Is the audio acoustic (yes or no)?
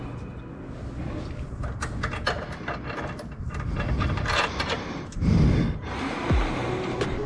yes